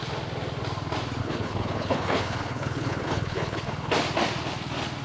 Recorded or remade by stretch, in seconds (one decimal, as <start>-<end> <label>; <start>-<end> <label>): 0.0-1.2 recorded; 1.2-3.9 remade; 3.9-5.0 recorded